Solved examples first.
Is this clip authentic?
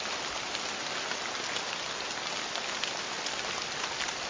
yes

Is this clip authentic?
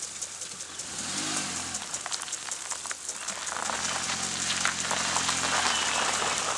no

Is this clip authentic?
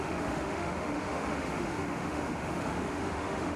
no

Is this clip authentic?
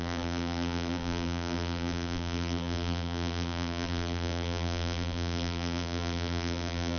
no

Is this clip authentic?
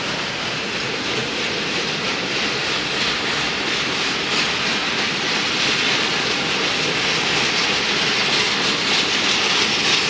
yes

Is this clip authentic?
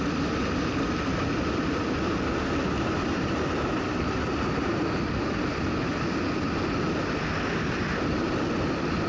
yes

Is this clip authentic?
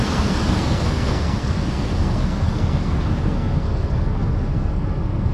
no